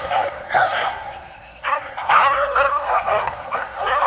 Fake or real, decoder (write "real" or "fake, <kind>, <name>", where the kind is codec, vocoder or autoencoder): fake, codec, SNAC